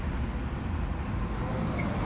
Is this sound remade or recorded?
recorded